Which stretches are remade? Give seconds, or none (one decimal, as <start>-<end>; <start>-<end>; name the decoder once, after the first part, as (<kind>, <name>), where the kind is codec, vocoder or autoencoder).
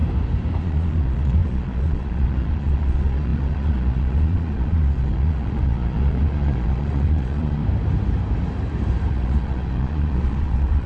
0.6-7.6 (vocoder, Vocos); 9.1-10.9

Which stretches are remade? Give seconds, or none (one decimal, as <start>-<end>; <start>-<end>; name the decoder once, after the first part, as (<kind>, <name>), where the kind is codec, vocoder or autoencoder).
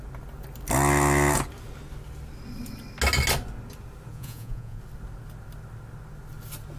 4.1-4.8 (vocoder, Vocos)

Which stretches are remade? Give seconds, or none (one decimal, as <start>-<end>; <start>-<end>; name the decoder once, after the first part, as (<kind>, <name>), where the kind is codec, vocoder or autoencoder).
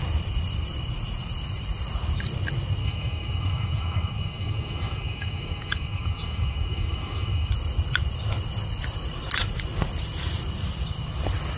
2.8-7.5 (autoencoder, DAC-VAE)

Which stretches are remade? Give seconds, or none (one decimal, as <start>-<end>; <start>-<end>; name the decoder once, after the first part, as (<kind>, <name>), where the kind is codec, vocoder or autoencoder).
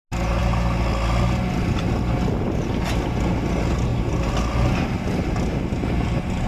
none